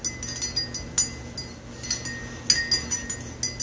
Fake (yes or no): no